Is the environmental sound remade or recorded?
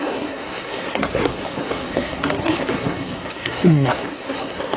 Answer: remade